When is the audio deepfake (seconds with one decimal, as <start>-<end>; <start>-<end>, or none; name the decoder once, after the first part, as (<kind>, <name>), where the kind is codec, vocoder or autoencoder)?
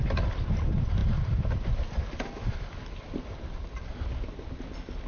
none